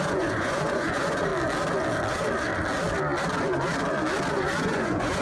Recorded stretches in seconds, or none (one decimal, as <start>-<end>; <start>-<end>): 1.3-4.3